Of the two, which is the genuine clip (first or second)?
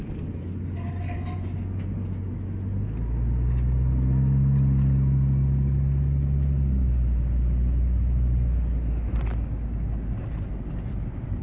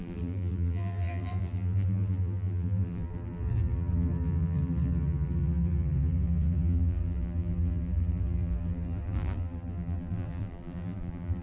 first